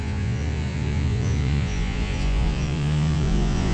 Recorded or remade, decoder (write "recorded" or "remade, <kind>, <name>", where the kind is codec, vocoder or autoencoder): remade, vocoder, Vocos